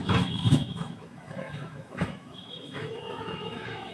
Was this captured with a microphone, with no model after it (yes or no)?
no